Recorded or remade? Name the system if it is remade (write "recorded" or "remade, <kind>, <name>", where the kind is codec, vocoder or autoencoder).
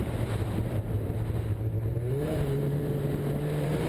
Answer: remade, vocoder, BigVGAN v2